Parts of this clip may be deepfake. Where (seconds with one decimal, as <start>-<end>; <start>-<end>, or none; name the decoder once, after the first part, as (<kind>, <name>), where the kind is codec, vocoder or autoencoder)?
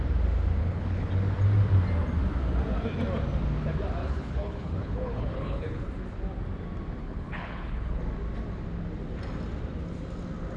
0.6-1.1 (codec, HILCodec); 4.0-5.9; 7.0-8.0